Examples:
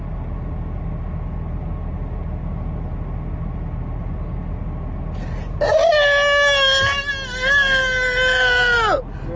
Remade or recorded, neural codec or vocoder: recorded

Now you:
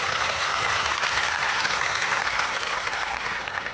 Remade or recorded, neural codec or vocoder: remade, codec, SNAC